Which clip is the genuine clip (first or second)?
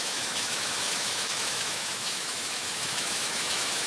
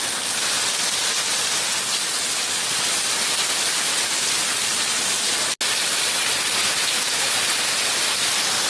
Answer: second